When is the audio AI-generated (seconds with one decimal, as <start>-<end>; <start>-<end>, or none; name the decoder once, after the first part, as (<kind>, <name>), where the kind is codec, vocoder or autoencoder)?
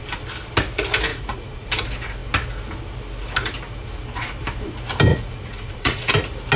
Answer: 1.1-1.7 (vocoder, Vocos); 5.1-6.1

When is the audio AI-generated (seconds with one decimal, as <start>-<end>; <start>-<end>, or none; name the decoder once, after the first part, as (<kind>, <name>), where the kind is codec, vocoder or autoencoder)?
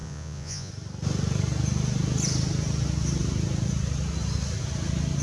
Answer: 0.0-0.7 (vocoder, Vocos)